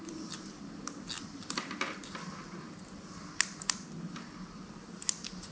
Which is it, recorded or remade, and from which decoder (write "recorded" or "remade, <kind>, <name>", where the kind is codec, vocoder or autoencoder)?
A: recorded